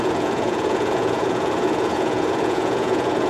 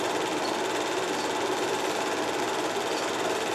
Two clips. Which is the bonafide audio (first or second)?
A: second